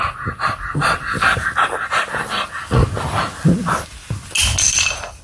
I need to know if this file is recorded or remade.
recorded